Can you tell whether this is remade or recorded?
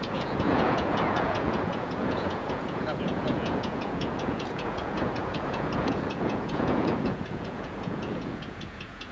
remade